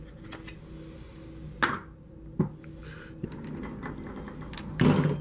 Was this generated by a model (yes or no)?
no